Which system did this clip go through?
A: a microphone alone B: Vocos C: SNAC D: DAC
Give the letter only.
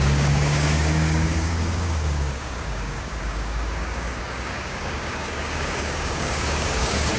D